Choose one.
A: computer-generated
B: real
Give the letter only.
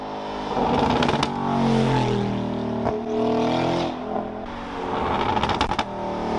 B